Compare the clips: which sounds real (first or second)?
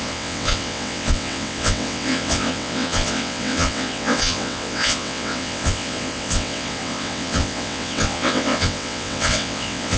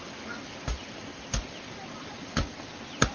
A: second